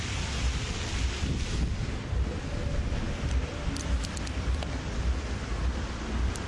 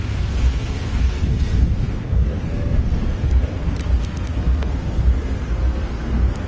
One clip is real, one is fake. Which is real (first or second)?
first